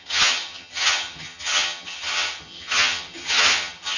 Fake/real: fake